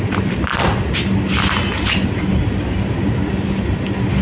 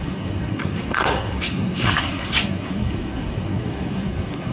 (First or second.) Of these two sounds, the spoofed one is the second